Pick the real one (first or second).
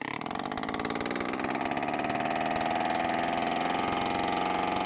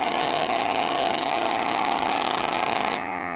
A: first